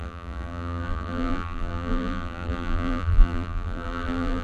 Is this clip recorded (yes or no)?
no